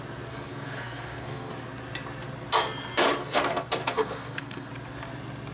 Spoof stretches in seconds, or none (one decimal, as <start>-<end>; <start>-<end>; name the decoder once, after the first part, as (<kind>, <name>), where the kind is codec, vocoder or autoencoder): 0.5-1.5 (codec, SNAC); 3.2-4.7